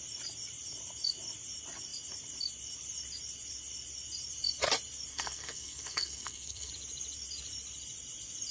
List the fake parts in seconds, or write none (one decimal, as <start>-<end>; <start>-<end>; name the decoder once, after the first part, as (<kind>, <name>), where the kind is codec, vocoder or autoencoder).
5.1-6.7 (codec, SNAC)